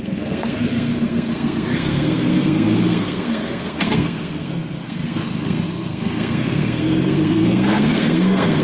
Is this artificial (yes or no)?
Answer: yes